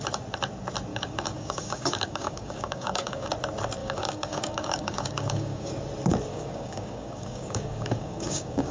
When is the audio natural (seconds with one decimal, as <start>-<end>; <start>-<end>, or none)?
0.0-0.9; 3.3-3.8; 5.7-6.3